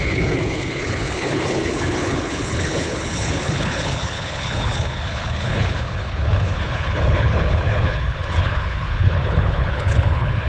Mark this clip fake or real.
fake